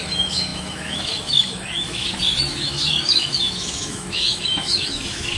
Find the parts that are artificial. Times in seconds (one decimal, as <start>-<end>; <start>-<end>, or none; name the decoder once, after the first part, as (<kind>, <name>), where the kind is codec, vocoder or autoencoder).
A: 0.0-5.4 (autoencoder, DAC-VAE)